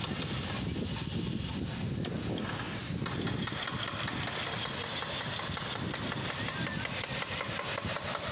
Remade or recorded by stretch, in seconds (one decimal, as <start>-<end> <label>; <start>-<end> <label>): 0.0-8.3 recorded